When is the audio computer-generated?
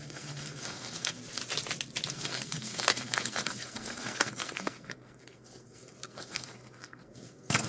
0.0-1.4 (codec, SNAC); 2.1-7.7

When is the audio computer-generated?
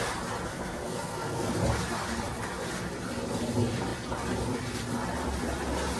0.5-1.6 (codec, SNAC)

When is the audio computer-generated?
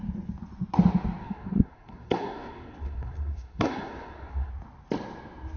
1.2-4.5 (codec, SNAC)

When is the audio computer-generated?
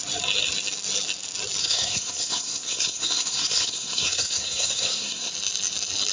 1.6-5.3 (codec, SNAC)